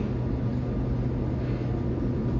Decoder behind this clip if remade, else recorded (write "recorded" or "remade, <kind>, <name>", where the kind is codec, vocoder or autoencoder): recorded